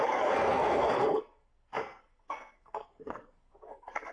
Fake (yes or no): yes